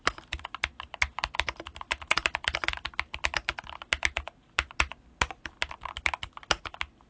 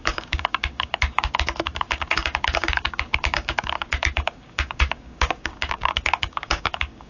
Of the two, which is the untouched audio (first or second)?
first